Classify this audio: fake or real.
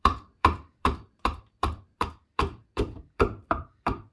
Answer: fake